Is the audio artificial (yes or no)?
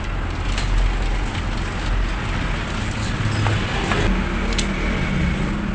no